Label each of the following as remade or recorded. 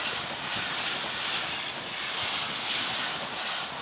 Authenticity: recorded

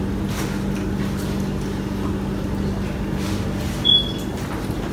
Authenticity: recorded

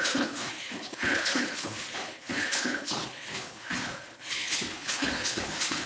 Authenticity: remade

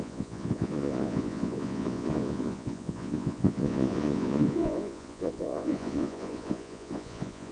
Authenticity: remade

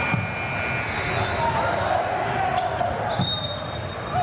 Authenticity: recorded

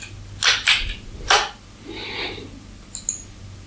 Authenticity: recorded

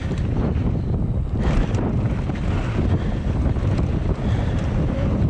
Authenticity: recorded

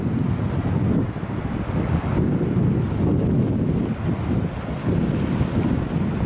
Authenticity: recorded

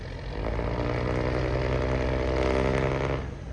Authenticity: recorded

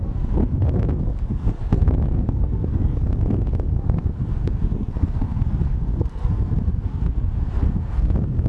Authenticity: remade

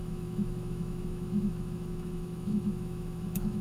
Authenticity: remade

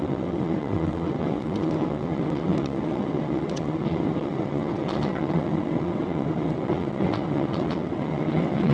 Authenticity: remade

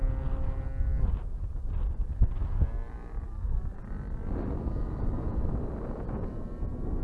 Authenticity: recorded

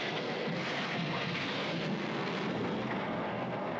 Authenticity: remade